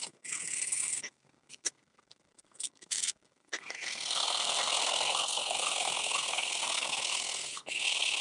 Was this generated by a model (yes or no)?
yes